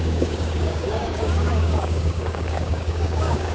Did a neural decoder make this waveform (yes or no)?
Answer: yes